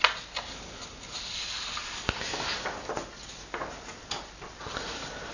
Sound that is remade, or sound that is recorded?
recorded